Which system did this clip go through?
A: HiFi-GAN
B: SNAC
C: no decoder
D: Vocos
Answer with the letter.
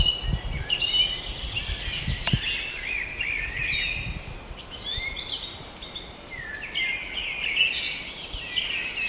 C